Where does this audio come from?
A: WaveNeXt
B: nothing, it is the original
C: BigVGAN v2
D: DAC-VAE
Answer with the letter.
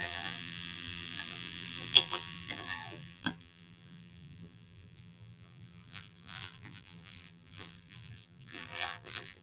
C